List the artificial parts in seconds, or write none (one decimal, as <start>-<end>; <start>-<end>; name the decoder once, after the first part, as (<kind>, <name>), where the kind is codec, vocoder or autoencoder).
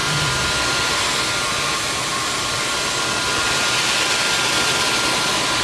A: none